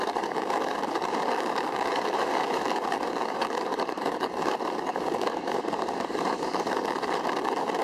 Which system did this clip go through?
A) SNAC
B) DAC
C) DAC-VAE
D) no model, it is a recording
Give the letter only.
B